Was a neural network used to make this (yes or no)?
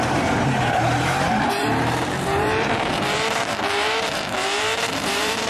yes